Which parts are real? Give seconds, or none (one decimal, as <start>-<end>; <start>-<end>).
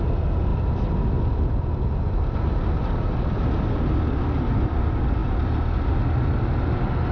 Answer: 0.0-7.1